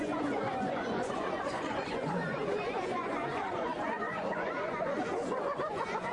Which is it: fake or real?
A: fake